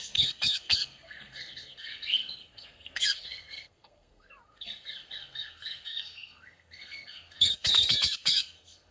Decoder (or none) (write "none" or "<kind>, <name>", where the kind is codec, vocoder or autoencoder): codec, SNAC